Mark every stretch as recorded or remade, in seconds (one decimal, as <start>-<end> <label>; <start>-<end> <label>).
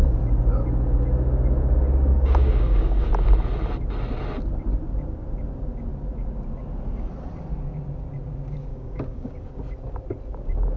0.0-2.1 recorded; 2.1-3.1 remade; 3.1-8.7 recorded; 8.7-9.4 remade; 9.4-10.8 recorded